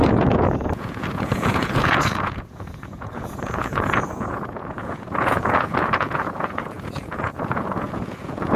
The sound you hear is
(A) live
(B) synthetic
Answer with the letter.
B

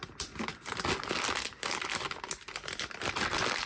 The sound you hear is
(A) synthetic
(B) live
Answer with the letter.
B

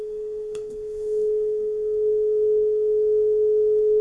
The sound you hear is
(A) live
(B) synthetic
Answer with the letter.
B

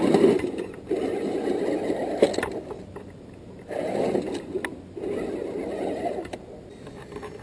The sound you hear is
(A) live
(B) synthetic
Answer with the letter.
A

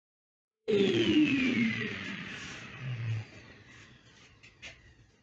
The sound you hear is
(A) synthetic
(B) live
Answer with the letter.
A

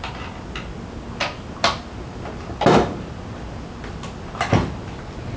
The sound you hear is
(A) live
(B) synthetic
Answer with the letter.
A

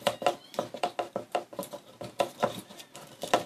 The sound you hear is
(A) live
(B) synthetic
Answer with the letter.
A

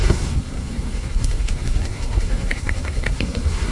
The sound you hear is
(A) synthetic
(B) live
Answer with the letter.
A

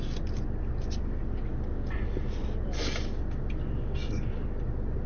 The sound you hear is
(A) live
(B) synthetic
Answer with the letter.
A